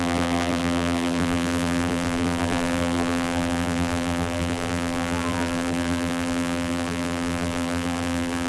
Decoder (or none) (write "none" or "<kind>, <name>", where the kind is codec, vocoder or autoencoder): vocoder, BigVGAN v2